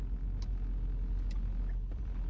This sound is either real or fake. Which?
real